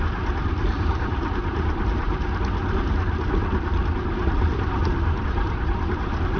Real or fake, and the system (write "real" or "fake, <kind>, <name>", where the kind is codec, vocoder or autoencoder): fake, vocoder, BigVGAN v2